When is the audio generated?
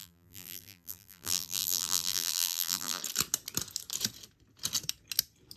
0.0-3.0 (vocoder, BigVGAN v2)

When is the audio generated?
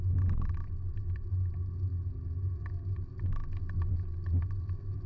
none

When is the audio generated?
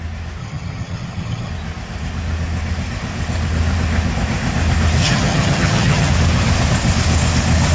0.4-1.5 (vocoder, HiFi-GAN); 5.0-6.1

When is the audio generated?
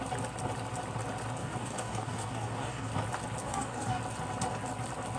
1.4-2.9 (codec, DAC); 3.4-4.0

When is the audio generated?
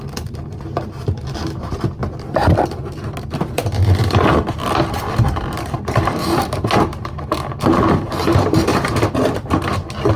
0.0-2.0 (vocoder, BigVGAN v2); 5.0-10.2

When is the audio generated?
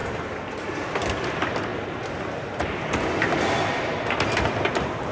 none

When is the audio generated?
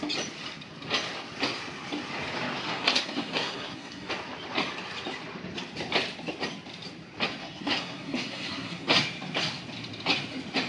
2.6-4.1 (codec, SNAC); 7.4-8.9